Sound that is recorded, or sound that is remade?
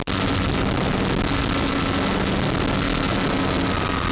recorded